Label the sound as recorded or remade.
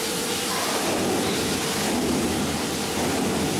recorded